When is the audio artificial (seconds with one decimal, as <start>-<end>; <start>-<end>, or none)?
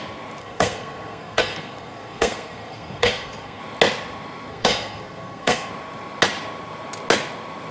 0.4-3.6; 4.5-5.7